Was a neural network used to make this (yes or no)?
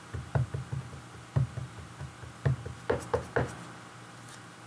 no